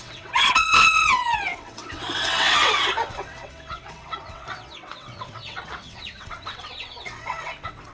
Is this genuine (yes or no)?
no